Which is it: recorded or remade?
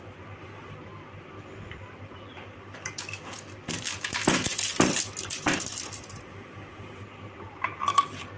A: recorded